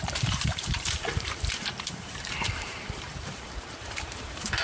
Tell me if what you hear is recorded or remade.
remade